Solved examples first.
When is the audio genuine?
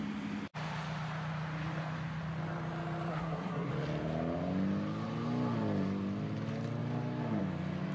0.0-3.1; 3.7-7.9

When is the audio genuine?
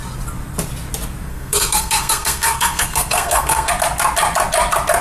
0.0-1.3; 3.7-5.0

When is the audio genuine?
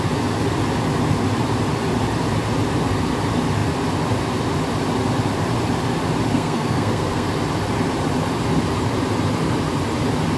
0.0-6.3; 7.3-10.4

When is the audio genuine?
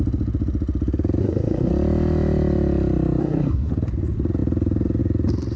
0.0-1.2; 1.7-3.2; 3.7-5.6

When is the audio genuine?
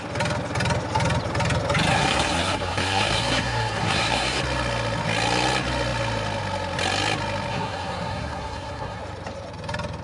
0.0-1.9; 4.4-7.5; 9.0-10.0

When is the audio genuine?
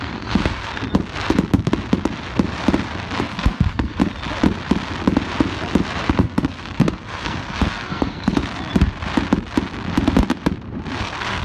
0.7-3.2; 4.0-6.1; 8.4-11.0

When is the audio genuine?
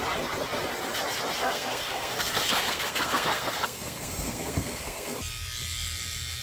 0.0-1.4; 5.2-6.4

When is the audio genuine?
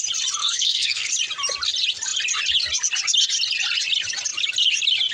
0.0-0.4; 1.1-5.1